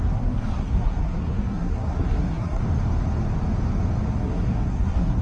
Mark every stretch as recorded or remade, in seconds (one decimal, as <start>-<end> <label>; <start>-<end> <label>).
0.0-2.6 remade; 2.6-4.1 recorded; 4.1-5.2 remade

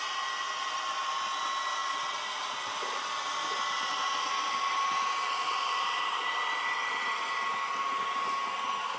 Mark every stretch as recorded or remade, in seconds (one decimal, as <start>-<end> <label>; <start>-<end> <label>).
0.0-9.0 recorded

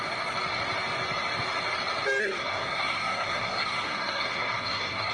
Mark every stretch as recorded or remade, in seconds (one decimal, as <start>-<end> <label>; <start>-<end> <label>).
0.0-2.2 recorded; 2.2-5.1 remade

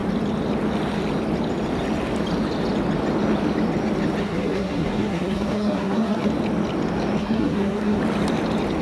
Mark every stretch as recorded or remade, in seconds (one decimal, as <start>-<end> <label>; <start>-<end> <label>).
0.0-4.2 recorded; 4.2-6.3 remade; 6.3-7.2 recorded; 7.2-8.0 remade; 8.0-8.8 recorded

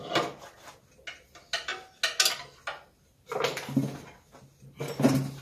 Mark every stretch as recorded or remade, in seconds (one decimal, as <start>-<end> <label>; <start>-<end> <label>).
0.0-5.4 recorded

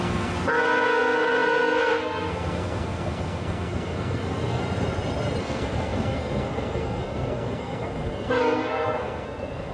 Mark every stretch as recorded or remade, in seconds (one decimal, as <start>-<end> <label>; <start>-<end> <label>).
0.0-4.6 remade; 4.6-5.4 recorded; 5.4-9.7 remade